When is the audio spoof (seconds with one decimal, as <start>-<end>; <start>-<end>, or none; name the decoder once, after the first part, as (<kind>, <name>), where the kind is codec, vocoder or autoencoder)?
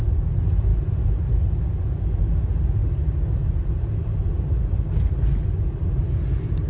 0.7-1.6 (vocoder, BigVGAN v2)